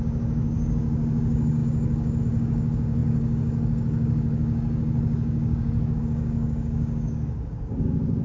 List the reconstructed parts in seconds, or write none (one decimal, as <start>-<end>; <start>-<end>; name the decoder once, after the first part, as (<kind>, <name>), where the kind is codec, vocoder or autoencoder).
0.0-8.2 (codec, DAC)